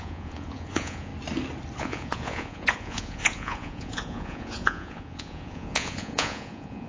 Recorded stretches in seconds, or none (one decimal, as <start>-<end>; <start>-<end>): 1.1-1.8